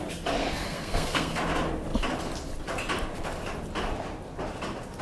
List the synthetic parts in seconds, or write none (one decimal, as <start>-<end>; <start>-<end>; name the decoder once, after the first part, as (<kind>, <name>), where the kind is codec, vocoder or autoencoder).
0.4-1.4 (codec, SNAC)